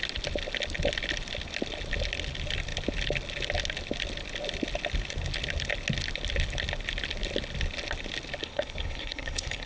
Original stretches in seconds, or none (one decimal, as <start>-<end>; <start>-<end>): 0.0-8.4